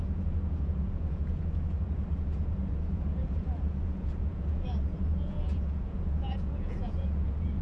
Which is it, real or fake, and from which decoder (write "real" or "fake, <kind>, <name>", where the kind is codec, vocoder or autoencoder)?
fake, vocoder, Vocos